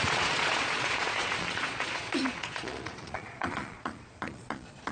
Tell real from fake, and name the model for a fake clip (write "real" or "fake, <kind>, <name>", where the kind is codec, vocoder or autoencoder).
fake, vocoder, Vocos